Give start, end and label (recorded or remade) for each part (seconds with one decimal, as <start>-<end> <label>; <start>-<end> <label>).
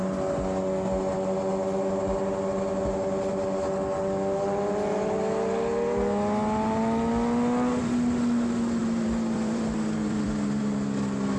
0.0-8.8 recorded; 8.8-10.6 remade; 10.6-11.4 recorded